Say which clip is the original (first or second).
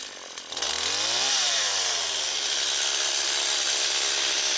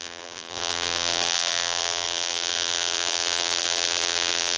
first